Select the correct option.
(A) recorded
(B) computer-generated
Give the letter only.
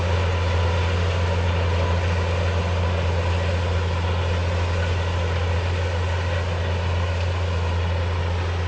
A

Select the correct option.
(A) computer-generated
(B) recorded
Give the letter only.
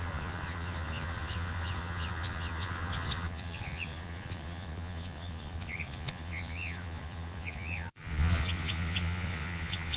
A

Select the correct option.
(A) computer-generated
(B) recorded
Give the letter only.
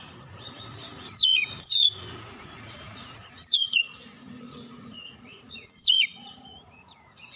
A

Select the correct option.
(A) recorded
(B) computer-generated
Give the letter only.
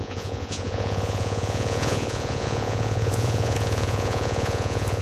B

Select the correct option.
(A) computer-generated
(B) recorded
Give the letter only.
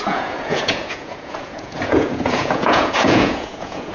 A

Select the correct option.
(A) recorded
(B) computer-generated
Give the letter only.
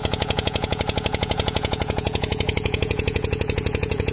B